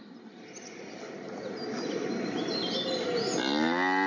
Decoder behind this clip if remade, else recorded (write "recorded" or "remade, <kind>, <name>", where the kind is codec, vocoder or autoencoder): recorded